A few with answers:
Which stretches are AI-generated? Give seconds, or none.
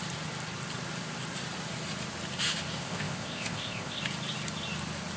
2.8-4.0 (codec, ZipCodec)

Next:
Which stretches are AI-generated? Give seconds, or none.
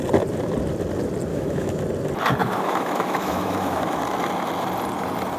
1.3-1.8 (autoencoder, DAC-VAE); 2.4-4.0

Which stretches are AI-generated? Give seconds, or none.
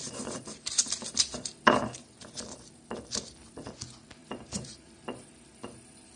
0.0-3.7 (vocoder, BigVGAN v2); 4.2-6.2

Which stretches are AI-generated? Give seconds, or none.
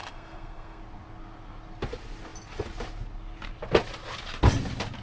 0.0-0.8 (codec, SNAC)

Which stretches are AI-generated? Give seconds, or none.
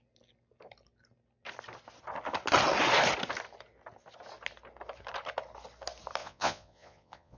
6.2-7.4 (vocoder, Vocos)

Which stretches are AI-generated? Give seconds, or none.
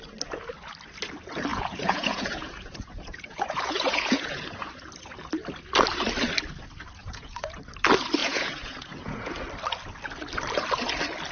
1.5-4.7 (vocoder, Vocos); 7.0-7.6; 8.2-9.3